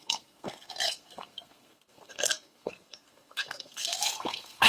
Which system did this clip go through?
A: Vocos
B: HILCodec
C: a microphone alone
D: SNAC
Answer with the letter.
D